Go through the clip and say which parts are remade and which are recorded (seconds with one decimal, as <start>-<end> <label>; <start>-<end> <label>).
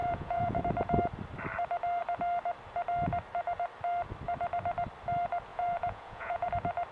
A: 0.0-0.6 remade; 0.6-5.5 recorded; 5.5-6.5 remade; 6.5-6.9 recorded